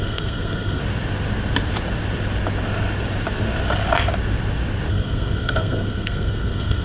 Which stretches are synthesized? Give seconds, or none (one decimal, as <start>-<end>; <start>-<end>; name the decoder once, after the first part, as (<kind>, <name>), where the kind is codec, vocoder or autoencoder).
0.0-0.8 (codec, SNAC); 4.9-6.8